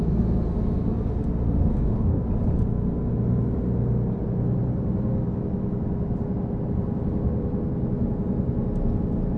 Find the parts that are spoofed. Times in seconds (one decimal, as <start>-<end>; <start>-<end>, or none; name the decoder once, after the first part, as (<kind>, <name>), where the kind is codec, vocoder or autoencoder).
1.7-2.2 (codec, DAC)